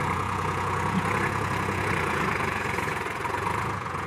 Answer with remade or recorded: remade